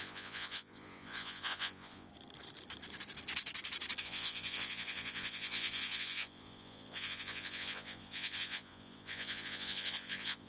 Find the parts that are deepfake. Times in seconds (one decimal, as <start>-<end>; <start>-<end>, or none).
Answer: 0.0-2.1; 4.0-10.5